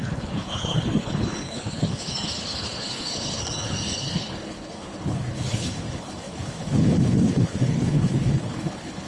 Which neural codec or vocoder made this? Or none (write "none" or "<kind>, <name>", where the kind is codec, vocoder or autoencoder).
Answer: codec, HILCodec